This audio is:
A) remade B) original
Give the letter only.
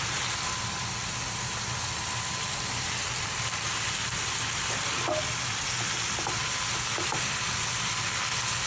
B